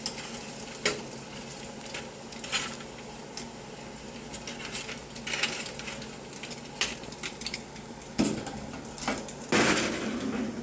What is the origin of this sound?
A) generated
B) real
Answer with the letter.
B